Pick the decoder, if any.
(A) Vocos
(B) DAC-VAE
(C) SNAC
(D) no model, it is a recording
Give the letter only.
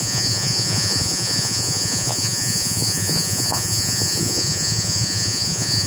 A